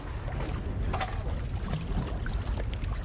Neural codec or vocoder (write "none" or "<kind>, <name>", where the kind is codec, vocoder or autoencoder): none